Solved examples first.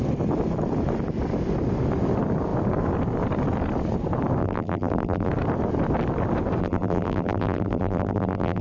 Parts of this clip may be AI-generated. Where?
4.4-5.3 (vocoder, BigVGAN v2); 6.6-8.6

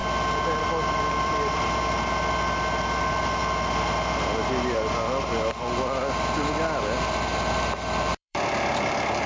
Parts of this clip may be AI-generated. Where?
0.6-9.3 (vocoder, BigVGAN v2)

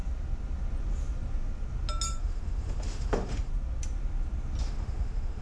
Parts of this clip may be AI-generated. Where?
2.2-3.5 (autoencoder, DAC-VAE); 4.6-5.4

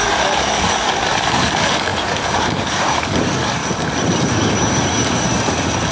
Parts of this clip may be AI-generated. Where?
0.0-3.6 (codec, DAC)

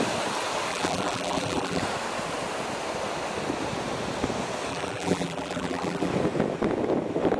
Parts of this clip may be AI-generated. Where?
0.7-1.8 (vocoder, BigVGAN v2); 4.7-6.1

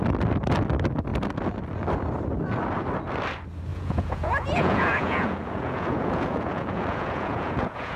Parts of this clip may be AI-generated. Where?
3.7-8.0 (vocoder, Vocos)

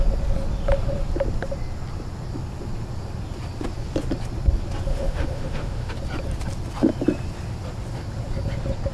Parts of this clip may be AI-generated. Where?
4.9-5.9 (autoencoder, DAC-VAE)

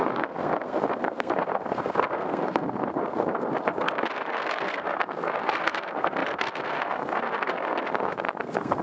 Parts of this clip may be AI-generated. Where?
0.0-8.8 (codec, SNAC)